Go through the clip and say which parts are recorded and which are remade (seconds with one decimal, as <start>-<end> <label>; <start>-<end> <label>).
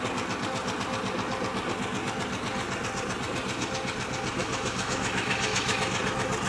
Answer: 0.0-4.4 recorded; 4.4-6.0 remade; 6.0-6.5 recorded